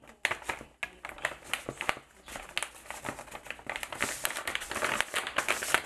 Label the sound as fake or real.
real